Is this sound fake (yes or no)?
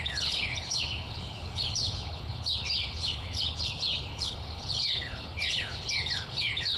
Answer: yes